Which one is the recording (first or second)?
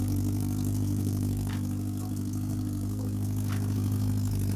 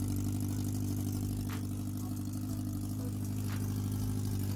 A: second